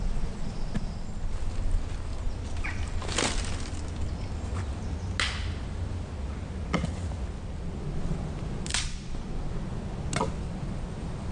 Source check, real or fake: real